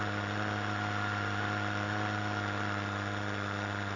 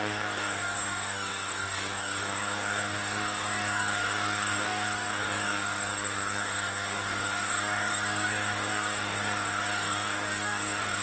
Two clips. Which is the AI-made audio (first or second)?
second